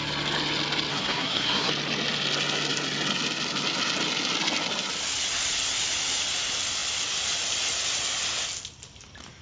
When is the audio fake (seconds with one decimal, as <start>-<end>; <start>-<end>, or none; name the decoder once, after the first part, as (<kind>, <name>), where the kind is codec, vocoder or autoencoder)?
0.9-1.7 (codec, SNAC)